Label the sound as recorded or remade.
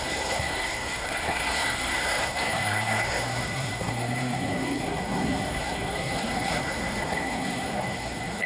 remade